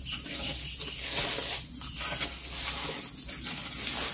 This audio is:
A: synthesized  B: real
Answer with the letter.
B